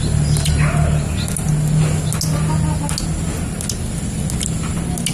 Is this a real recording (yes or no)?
yes